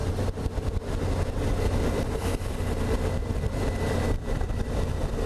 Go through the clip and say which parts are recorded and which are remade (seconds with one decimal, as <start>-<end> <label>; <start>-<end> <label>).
0.0-1.3 recorded; 1.3-5.3 remade

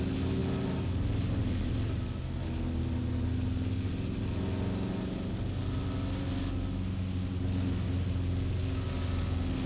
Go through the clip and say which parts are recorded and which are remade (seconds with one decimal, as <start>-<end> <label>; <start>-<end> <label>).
0.0-9.7 recorded

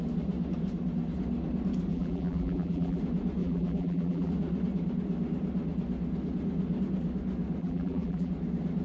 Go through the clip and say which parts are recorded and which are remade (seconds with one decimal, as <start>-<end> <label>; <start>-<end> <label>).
0.0-1.9 recorded; 1.9-3.0 remade; 3.0-3.4 recorded; 3.4-4.3 remade; 4.3-7.6 recorded; 7.6-8.3 remade; 8.3-8.8 recorded

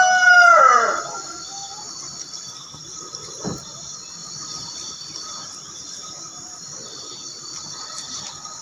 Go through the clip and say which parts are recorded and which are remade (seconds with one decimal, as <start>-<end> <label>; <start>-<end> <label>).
0.0-2.1 recorded; 2.1-3.1 remade; 3.1-4.2 recorded; 4.2-6.5 remade; 6.5-8.6 recorded

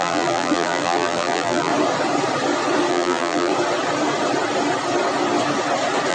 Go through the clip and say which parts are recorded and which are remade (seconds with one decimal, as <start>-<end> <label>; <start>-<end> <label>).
0.0-1.7 remade; 1.7-2.9 recorded; 2.9-3.5 remade; 3.5-6.1 recorded